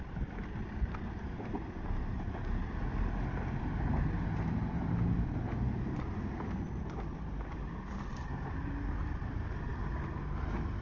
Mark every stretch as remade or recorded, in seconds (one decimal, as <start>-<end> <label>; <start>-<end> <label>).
0.0-10.8 recorded